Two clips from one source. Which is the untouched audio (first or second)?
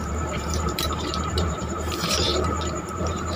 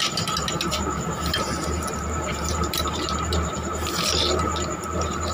second